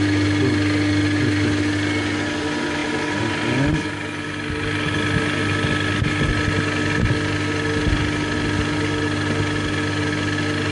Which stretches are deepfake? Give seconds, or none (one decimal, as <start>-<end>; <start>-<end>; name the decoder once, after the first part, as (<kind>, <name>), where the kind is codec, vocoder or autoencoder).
none